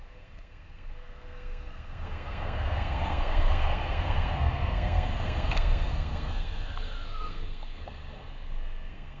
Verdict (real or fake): fake